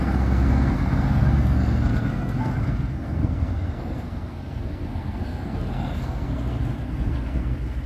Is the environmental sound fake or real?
fake